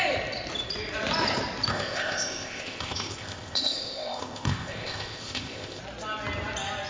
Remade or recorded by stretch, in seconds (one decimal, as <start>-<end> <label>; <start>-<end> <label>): 0.0-1.7 recorded; 1.7-5.8 remade; 5.8-6.9 recorded